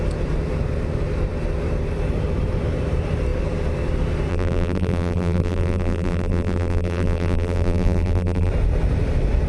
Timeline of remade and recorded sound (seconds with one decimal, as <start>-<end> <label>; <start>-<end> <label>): 0.0-4.3 recorded; 4.3-8.5 remade; 8.5-9.5 recorded